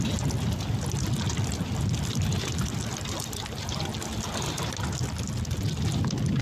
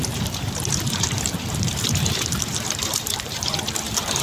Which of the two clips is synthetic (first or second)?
second